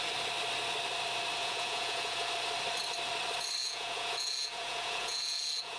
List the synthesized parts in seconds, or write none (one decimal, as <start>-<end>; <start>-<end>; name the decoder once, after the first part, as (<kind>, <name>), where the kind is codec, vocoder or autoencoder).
1.4-2.3 (vocoder, Vocos); 3.6-5.8